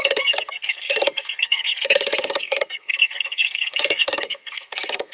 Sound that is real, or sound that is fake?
fake